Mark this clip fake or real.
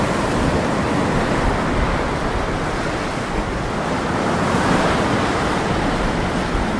real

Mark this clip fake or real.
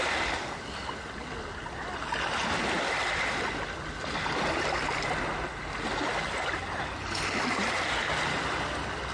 real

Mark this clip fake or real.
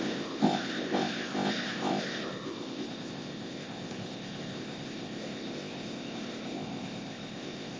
fake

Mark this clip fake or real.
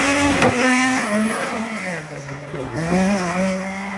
fake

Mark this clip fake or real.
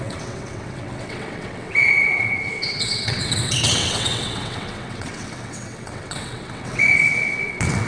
fake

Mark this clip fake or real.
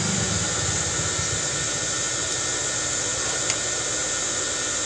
real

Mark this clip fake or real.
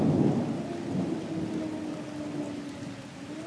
real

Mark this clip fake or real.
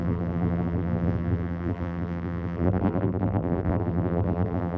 fake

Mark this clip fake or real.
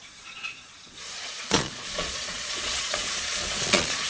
fake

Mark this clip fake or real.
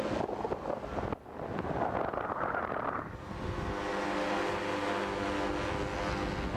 real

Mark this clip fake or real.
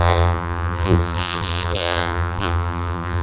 fake